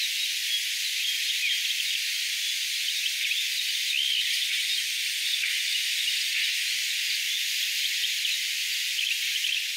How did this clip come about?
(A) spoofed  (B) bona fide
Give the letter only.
B